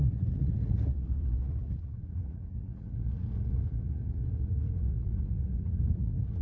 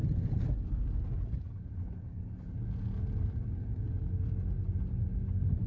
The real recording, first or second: second